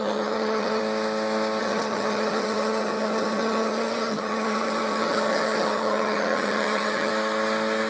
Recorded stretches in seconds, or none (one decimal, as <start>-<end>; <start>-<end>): 0.8-1.6; 7.1-7.9